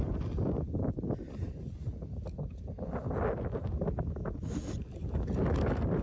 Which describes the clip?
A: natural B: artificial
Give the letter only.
A